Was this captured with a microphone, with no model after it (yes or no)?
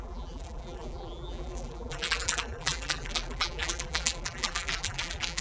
no